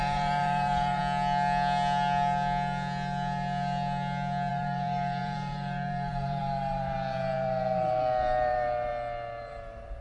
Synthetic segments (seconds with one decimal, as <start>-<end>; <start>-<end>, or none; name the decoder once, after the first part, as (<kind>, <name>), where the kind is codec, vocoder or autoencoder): 0.0-1.0 (vocoder, BigVGAN v2); 4.5-8.9; 9.4-10.0